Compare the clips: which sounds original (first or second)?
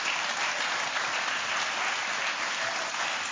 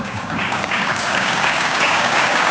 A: first